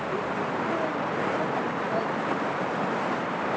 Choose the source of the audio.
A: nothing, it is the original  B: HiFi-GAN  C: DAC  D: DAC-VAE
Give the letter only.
A